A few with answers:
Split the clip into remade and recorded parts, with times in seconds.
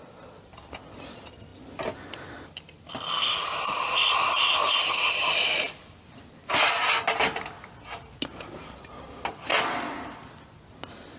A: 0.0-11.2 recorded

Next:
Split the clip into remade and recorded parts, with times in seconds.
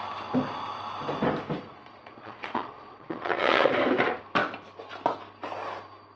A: 0.0-1.7 recorded; 1.7-3.7 remade; 3.7-6.2 recorded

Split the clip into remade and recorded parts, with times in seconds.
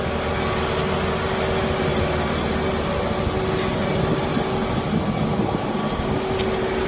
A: 0.0-6.9 recorded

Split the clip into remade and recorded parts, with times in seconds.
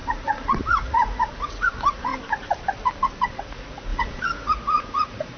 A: 0.0-2.1 remade; 2.1-3.3 recorded; 3.3-5.4 remade